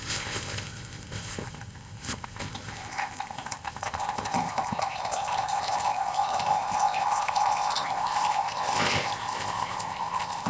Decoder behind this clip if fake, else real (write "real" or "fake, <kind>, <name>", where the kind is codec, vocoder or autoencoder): fake, codec, ZipCodec